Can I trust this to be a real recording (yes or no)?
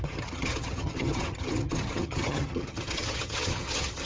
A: no